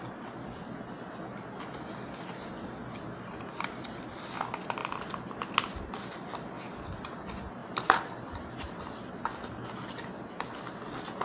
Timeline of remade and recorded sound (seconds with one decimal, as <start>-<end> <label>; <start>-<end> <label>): 0.0-7.6 recorded; 7.6-8.8 remade; 8.8-11.2 recorded